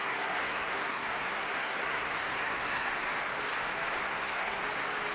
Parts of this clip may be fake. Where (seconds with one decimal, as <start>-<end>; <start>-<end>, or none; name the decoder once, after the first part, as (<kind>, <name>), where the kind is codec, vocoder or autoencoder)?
0.0-2.9 (codec, SNAC); 4.0-4.6